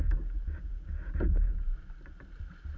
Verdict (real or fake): real